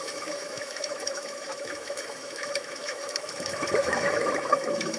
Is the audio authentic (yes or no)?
no